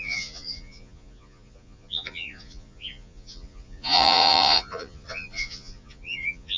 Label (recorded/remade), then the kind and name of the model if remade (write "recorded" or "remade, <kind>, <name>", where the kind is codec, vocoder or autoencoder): remade, vocoder, Vocos